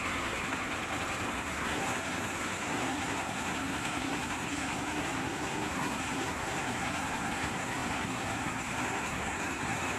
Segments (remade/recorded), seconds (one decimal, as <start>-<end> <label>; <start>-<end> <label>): 0.0-0.7 remade; 0.7-1.3 recorded; 1.3-10.0 remade